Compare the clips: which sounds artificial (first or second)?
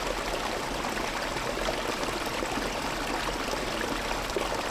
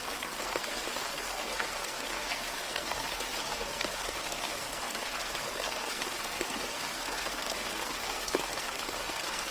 second